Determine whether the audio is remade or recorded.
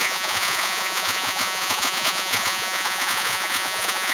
remade